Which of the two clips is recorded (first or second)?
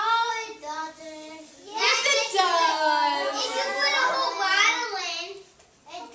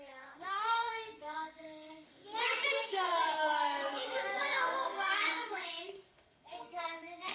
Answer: first